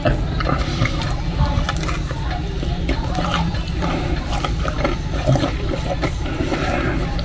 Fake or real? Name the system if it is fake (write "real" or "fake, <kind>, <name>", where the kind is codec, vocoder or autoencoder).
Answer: fake, vocoder, BigVGAN v2